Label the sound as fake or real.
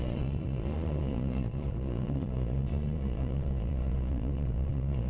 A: fake